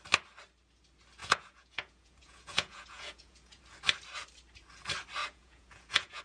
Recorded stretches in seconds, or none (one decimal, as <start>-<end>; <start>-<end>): 0.0-1.2; 3.6-5.2